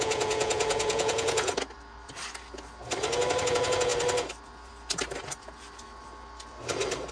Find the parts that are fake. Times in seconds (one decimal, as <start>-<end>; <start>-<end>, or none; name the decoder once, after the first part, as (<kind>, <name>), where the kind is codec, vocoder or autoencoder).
0.0-1.5 (vocoder, Vocos); 3.5-3.9